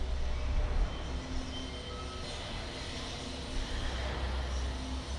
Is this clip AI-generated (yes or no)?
no